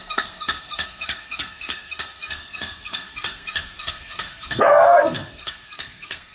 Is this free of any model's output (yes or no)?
no